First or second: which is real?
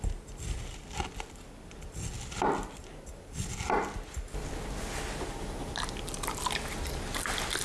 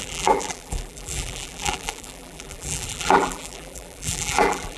first